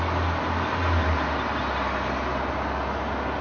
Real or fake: real